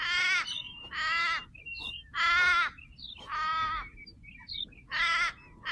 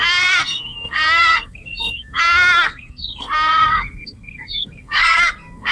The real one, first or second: first